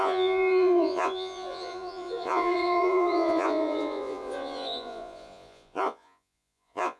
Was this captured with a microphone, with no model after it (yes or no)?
no